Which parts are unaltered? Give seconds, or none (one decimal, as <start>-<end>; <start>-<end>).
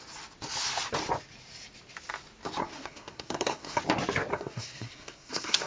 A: 0.0-2.6; 3.8-4.3